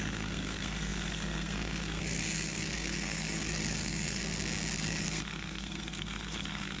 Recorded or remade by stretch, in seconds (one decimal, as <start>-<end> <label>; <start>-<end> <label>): 0.0-4.2 remade; 4.2-4.8 recorded; 4.8-6.8 remade